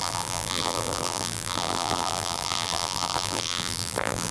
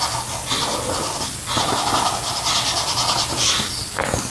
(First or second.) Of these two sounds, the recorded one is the second